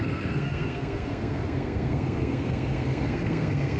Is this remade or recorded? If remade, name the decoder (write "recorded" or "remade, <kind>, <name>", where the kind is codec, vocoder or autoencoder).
remade, codec, SNAC